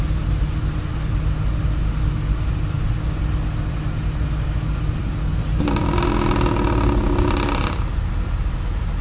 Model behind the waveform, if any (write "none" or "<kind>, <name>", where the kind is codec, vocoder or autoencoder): none